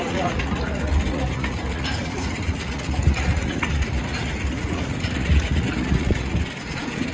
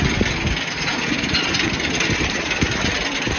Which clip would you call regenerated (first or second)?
first